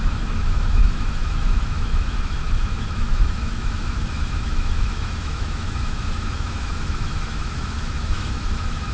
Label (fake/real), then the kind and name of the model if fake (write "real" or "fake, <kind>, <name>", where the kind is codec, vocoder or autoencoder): fake, autoencoder, DAC-VAE